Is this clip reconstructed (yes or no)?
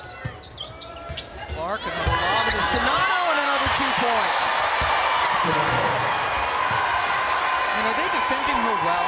no